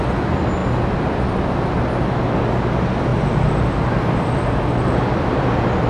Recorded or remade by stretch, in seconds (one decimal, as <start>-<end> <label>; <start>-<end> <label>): 0.0-3.1 recorded; 3.1-5.9 remade